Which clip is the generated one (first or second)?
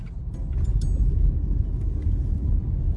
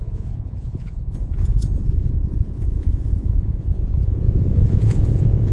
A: second